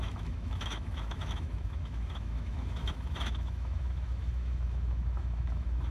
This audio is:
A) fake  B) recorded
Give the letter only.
A